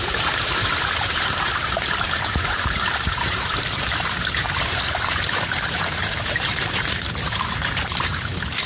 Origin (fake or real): fake